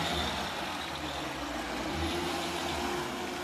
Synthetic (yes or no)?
no